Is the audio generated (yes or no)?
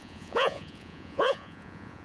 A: yes